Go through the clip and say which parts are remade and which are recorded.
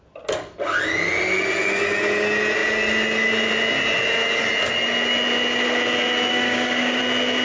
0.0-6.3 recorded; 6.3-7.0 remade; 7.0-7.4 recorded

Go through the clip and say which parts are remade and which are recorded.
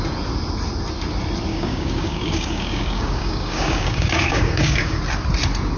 0.0-1.5 recorded; 1.5-5.0 remade; 5.0-5.8 recorded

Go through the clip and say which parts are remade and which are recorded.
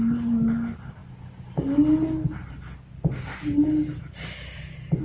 0.0-5.0 recorded